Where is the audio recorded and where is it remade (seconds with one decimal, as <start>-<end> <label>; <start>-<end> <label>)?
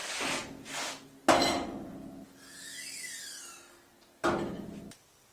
0.0-5.3 recorded